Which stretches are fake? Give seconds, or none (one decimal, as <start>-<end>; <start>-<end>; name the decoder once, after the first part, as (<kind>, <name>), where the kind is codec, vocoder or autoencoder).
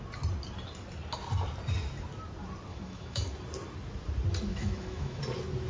2.7-3.2 (autoencoder, DAC-VAE); 4.5-5.2